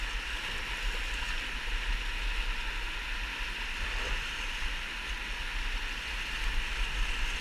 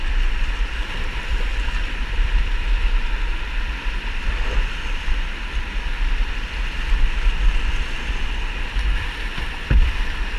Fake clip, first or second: second